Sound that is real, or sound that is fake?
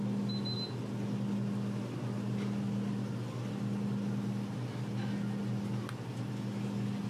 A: real